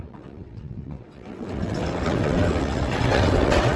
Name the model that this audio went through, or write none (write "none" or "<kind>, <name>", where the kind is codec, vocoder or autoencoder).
vocoder, WaveNeXt